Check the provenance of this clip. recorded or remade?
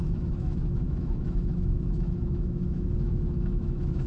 remade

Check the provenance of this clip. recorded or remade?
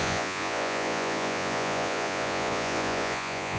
remade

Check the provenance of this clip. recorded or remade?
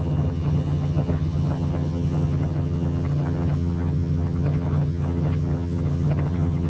remade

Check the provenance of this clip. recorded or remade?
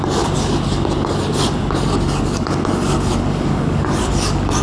remade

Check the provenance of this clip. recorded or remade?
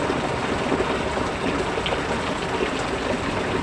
recorded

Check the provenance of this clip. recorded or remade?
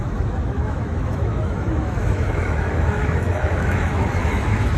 remade